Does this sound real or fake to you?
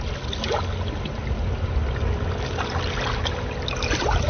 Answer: real